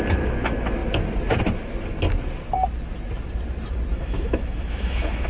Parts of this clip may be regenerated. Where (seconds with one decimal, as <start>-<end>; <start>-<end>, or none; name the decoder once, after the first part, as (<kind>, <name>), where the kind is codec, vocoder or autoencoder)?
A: 3.9-5.3 (autoencoder, DAC-VAE)